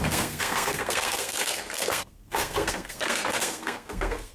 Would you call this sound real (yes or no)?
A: no